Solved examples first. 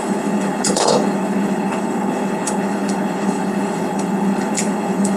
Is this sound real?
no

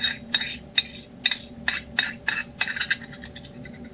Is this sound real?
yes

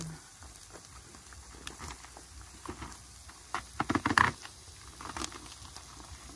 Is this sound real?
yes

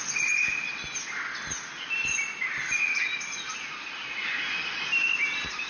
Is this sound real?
yes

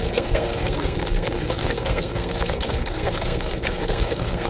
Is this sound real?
no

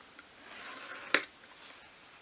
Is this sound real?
yes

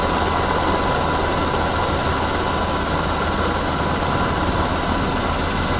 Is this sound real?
yes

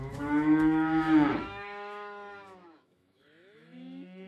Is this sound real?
no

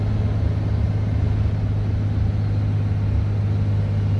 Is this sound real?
yes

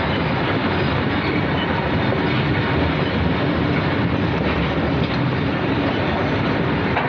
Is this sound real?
yes